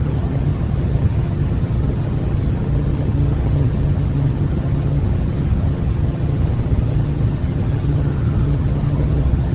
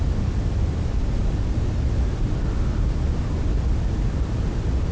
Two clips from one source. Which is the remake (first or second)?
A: first